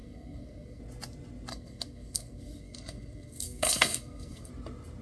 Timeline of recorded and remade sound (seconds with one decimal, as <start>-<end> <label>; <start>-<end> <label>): 0.0-0.8 remade; 0.8-1.5 recorded; 1.5-4.5 remade; 4.5-5.0 recorded